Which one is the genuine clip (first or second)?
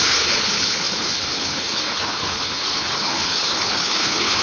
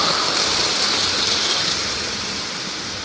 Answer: second